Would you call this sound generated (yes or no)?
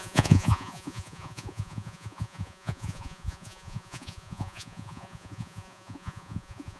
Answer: yes